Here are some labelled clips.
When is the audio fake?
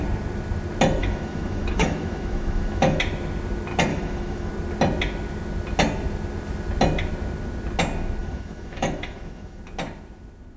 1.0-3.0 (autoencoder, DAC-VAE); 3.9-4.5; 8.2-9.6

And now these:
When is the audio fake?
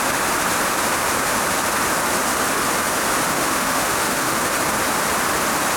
3.3-4.5 (autoencoder, DAC-VAE)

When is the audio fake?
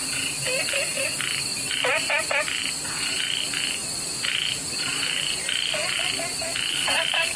1.5-2.3 (vocoder, BigVGAN v2)